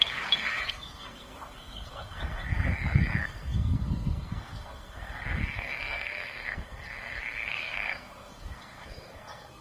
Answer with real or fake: fake